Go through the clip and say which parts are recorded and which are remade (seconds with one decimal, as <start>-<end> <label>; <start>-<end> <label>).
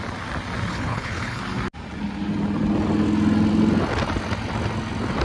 0.0-0.7 recorded; 0.7-1.4 remade; 1.4-5.2 recorded